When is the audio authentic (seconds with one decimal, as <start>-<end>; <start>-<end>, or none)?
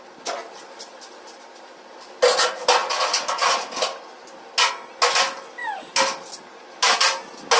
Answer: 0.0-7.6